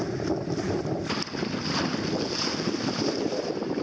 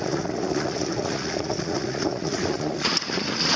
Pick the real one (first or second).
first